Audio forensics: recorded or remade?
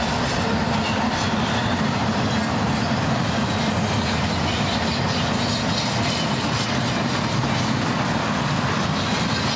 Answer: recorded